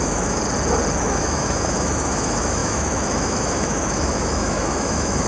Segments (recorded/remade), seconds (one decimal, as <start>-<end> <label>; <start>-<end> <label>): 0.0-0.4 remade; 0.4-1.0 recorded; 1.0-5.3 remade